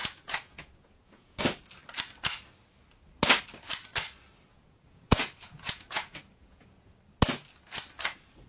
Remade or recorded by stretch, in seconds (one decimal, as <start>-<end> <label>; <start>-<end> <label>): 0.0-1.4 remade; 1.4-4.5 recorded; 4.5-7.0 remade; 7.0-8.5 recorded